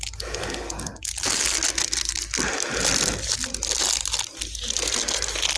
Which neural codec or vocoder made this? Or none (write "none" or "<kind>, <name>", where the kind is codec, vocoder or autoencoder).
none